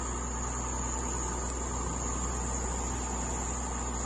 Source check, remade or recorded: recorded